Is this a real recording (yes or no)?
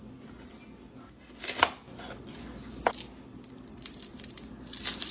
yes